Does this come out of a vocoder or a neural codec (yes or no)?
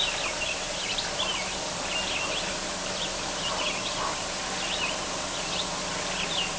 no